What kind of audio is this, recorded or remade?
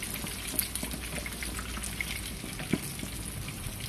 recorded